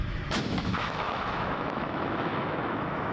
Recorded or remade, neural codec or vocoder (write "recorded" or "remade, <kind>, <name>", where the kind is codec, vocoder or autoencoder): remade, autoencoder, DAC-VAE